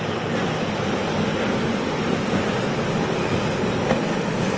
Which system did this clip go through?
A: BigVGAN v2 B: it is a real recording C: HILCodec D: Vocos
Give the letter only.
B